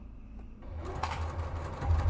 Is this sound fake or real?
real